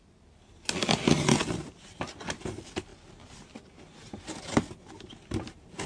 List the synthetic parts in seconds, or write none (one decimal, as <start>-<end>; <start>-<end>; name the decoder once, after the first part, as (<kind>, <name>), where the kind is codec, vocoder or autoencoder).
none